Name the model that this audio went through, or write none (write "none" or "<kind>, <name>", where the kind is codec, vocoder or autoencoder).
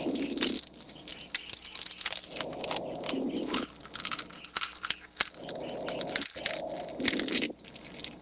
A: none